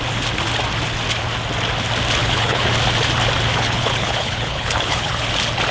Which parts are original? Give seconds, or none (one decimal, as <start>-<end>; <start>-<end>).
0.0-2.2; 2.7-3.5; 5.3-5.7